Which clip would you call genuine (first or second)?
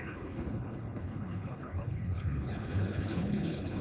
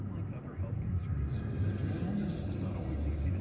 second